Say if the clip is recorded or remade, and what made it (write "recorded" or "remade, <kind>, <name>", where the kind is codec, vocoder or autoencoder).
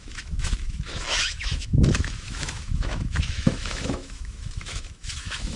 remade, autoencoder, DAC-VAE